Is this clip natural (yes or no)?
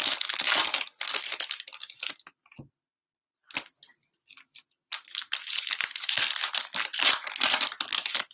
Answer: yes